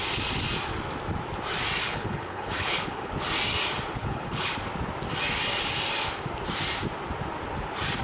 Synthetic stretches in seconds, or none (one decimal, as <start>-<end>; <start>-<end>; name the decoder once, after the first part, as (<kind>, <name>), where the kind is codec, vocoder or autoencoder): 1.8-3.1 (codec, HILCodec); 4.0-4.5